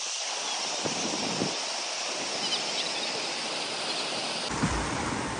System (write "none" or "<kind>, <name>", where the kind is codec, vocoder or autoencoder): none